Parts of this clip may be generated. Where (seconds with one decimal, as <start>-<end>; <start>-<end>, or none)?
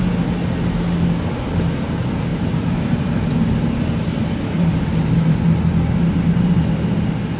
2.3-5.4